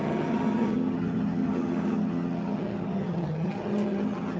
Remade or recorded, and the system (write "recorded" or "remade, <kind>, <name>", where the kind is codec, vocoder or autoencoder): remade, vocoder, HiFi-GAN